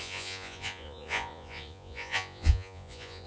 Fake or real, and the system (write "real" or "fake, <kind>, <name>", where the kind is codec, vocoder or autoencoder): fake, vocoder, Vocos